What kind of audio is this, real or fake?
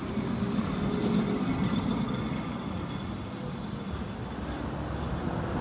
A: real